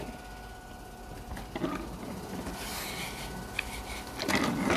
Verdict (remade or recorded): recorded